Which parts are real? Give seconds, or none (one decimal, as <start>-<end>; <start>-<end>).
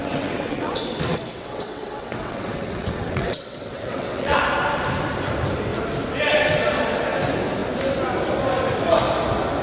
4.4-9.6